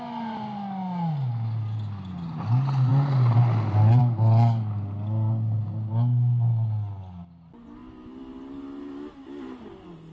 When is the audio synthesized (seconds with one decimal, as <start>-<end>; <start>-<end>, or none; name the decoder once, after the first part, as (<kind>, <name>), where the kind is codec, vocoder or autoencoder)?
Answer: none